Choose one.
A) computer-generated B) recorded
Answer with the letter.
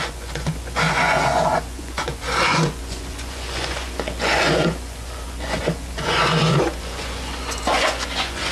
A